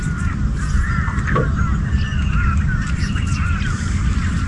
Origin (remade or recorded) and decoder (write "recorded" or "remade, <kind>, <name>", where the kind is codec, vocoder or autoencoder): recorded